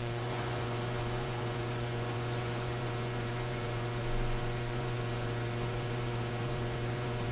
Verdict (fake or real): fake